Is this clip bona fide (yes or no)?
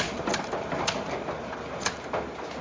yes